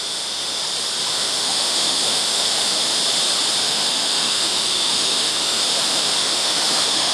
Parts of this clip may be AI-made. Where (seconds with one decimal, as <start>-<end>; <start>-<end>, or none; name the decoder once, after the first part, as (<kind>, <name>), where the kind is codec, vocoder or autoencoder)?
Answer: 0.0-0.6 (autoencoder, DAC-VAE); 1.1-3.0; 3.6-7.1